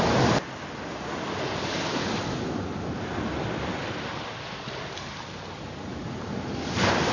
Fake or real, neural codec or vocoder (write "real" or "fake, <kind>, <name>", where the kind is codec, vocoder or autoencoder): real